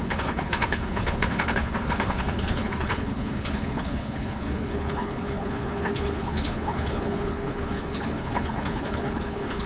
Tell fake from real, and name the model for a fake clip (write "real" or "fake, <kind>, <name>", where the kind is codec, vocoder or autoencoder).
fake, codec, HILCodec